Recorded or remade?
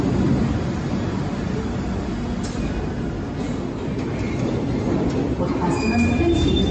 recorded